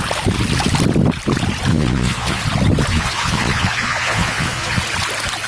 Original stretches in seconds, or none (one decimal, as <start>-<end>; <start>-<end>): 0.0-1.7; 2.4-2.9; 4.8-5.5